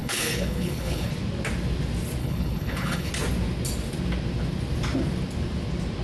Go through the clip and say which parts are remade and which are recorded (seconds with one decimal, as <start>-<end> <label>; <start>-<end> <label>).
0.0-1.1 remade; 1.1-2.2 recorded; 2.2-3.1 remade; 3.1-6.0 recorded